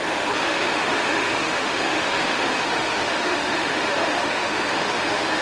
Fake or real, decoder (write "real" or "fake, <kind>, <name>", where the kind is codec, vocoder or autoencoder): fake, autoencoder, DAC-VAE